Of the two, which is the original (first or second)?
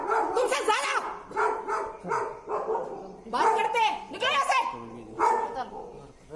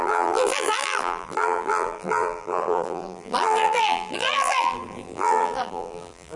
first